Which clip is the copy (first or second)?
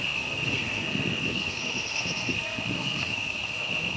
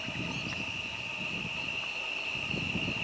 first